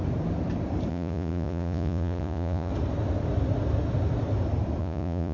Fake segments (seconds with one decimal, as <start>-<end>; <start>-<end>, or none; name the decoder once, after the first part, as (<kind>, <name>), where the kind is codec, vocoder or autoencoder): 0.9-2.7 (vocoder, Vocos); 4.8-5.3